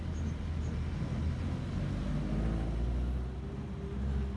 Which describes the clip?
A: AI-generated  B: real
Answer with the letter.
B